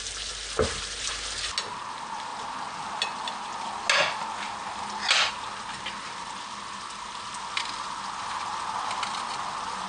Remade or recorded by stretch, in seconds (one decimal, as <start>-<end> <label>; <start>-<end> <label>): 0.0-9.9 recorded